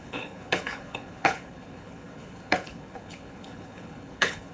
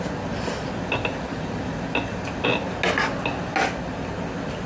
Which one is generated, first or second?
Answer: first